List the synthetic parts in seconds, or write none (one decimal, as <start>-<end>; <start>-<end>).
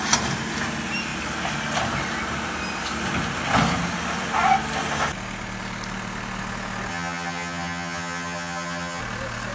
6.9-9.0